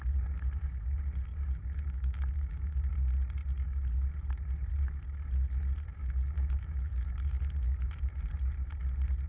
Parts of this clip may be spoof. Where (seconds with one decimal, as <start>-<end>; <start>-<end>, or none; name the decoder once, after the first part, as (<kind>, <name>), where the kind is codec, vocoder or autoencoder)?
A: 1.6-2.9 (autoencoder, DAC-VAE); 6.0-8.2